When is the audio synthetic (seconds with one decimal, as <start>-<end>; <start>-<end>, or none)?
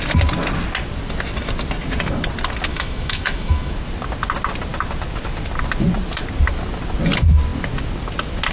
2.7-3.7